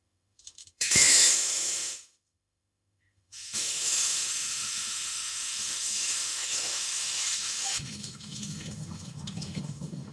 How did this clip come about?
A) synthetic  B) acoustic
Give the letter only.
A